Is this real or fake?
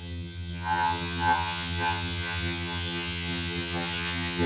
fake